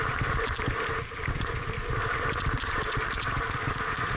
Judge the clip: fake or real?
real